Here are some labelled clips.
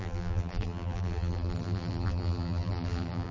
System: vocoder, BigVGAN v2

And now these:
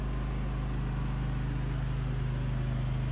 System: none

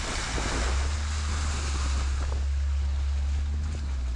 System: none